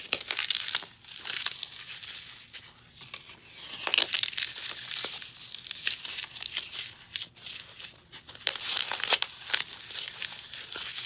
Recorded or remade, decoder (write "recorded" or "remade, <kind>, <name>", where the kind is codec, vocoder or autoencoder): recorded